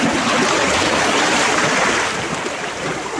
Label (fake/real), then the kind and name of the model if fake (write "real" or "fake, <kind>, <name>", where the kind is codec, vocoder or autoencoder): fake, vocoder, BigVGAN v2